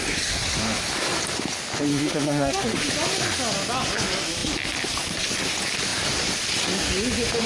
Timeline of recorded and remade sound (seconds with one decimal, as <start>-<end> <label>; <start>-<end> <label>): 0.0-1.9 recorded; 1.9-2.9 remade; 2.9-7.5 recorded